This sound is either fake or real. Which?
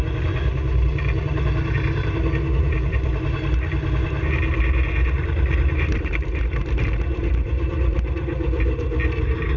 fake